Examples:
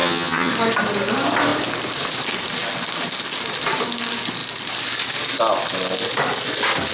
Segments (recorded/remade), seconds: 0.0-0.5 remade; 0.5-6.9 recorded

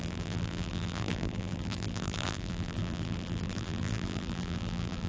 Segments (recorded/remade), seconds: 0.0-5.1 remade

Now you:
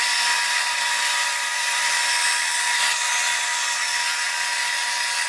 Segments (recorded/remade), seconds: 0.0-2.0 remade; 2.0-5.3 recorded

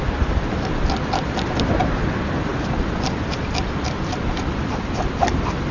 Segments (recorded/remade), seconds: 0.0-5.7 recorded

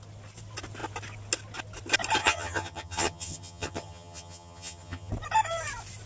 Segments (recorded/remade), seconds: 0.0-2.2 recorded; 2.2-5.1 remade; 5.1-6.1 recorded